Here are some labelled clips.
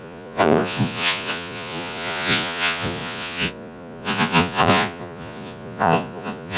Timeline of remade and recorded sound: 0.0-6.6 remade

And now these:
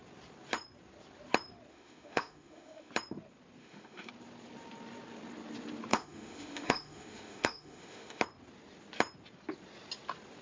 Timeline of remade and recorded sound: 0.0-1.7 recorded; 1.7-2.9 remade; 2.9-3.6 recorded; 3.6-4.1 remade; 4.1-5.9 recorded; 5.9-8.2 remade; 8.2-10.4 recorded

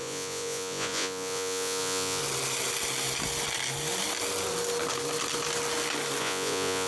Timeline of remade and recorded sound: 0.0-2.2 remade; 2.2-6.2 recorded; 6.2-6.9 remade

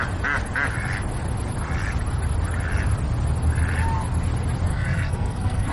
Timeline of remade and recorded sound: 0.0-4.7 recorded; 4.7-5.7 remade

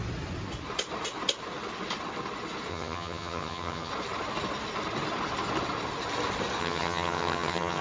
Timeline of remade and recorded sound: 0.0-2.7 recorded; 2.7-3.9 remade; 3.9-6.6 recorded; 6.6-7.8 remade

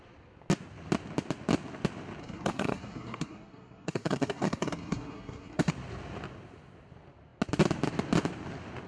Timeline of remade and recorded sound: 0.0-2.2 recorded; 2.2-5.7 remade; 5.7-8.9 recorded